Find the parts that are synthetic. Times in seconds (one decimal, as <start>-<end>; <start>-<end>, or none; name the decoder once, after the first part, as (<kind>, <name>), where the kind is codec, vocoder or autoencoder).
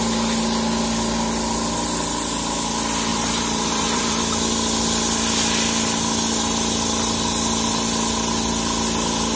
3.1-4.2 (vocoder, BigVGAN v2)